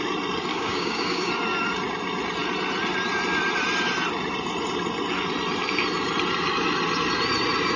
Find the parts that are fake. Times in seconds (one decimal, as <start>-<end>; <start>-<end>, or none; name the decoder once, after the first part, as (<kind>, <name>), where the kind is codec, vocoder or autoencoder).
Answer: 0.5-1.3 (codec, DAC)